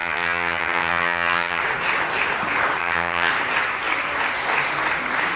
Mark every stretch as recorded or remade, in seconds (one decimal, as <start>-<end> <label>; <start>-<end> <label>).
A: 0.0-1.6 remade; 1.6-2.8 recorded; 2.8-3.3 remade; 3.3-5.4 recorded